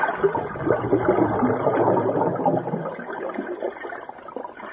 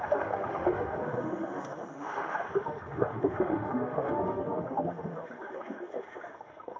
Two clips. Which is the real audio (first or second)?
first